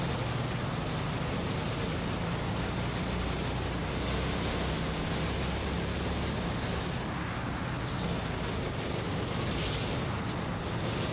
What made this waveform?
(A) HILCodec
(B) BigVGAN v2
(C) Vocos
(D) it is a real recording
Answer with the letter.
D